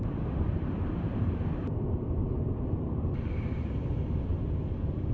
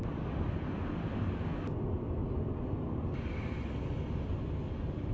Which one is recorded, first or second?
second